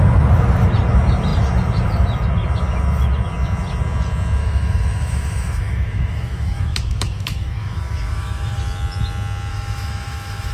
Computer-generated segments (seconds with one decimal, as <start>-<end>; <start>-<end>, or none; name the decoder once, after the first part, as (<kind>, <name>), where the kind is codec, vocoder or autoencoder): 4.4-8.6 (autoencoder, DAC-VAE); 9.5-10.5